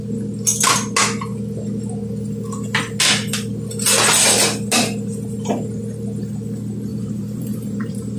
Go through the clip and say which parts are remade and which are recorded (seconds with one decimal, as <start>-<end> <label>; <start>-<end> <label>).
0.0-6.9 recorded; 6.9-8.2 remade